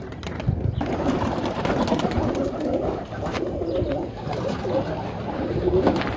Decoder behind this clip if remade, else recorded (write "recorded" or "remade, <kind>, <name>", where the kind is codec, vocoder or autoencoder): recorded